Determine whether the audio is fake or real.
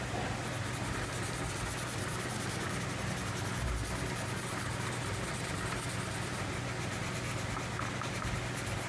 real